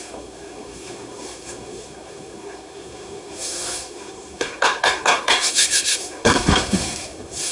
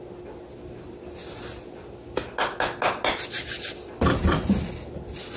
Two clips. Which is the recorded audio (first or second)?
second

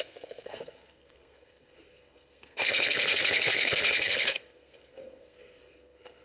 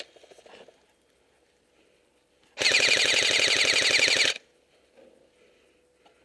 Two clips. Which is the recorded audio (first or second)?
second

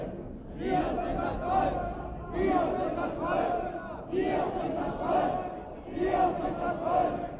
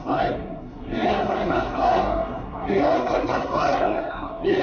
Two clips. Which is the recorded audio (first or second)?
first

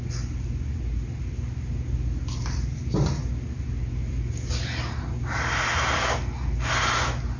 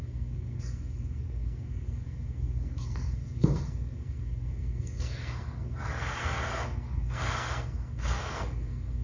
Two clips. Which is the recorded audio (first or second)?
first